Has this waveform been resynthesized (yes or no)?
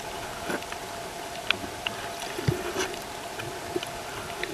no